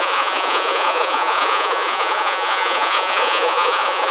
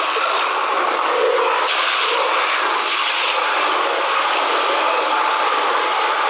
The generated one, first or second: first